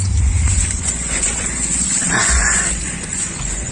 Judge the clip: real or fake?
fake